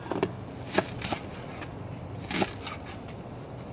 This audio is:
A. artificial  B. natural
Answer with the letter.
B